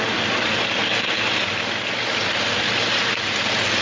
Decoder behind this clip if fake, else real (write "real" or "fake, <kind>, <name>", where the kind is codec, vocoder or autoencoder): real